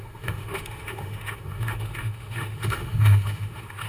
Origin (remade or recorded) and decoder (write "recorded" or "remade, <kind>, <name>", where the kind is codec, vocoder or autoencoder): remade, autoencoder, DAC-VAE